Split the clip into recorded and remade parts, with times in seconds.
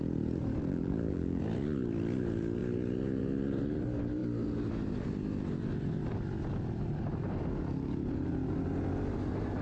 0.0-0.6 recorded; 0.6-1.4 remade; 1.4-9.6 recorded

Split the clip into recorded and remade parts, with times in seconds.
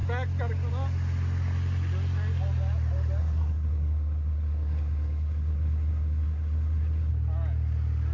0.0-3.2 recorded; 3.2-7.1 remade; 7.1-8.1 recorded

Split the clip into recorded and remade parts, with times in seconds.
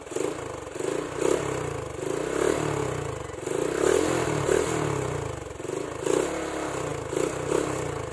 0.0-8.1 recorded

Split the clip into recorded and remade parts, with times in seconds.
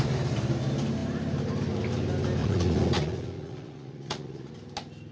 0.0-2.4 recorded; 2.4-4.5 remade; 4.5-5.1 recorded